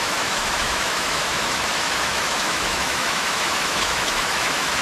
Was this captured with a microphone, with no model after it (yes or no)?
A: no